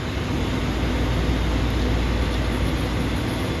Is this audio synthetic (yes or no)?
no